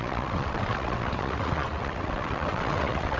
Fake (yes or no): yes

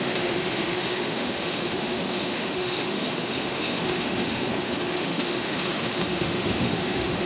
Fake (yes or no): yes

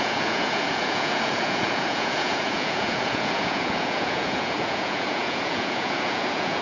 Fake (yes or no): yes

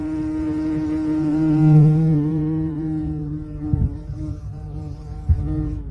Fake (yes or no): yes